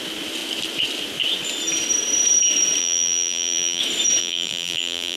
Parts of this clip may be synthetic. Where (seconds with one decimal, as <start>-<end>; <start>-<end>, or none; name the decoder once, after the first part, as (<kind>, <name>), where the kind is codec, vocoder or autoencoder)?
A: 2.8-3.8 (vocoder, BigVGAN v2); 4.2-5.2

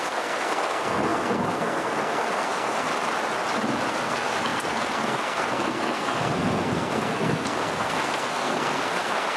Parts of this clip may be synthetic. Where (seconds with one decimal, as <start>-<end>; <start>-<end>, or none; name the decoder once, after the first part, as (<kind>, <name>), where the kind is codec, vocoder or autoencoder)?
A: 0.0-2.9 (codec, SNAC); 3.9-9.4